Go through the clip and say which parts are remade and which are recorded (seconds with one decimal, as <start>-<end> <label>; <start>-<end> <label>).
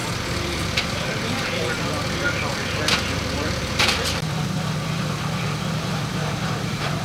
0.0-7.0 remade